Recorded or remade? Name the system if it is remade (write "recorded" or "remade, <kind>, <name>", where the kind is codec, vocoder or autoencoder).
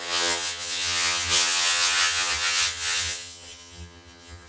remade, vocoder, HiFi-GAN